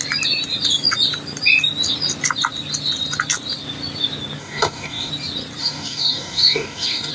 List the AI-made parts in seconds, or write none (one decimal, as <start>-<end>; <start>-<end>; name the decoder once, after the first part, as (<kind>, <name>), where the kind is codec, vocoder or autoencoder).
4.4-5.1 (codec, DAC); 5.6-7.1